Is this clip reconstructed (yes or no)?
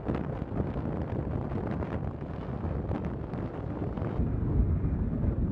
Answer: no